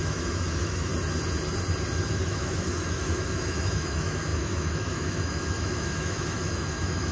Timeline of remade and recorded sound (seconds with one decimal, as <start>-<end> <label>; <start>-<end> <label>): 0.0-0.9 remade; 0.9-2.1 recorded; 2.1-7.1 remade